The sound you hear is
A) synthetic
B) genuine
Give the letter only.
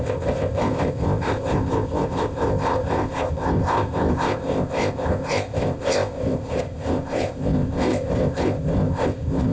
A